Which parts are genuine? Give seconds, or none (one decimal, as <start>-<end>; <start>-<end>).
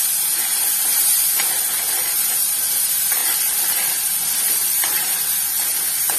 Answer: 0.0-3.2; 3.9-6.2